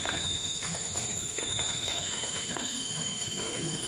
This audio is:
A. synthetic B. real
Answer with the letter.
A